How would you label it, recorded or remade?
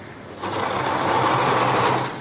recorded